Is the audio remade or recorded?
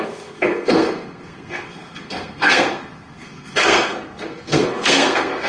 remade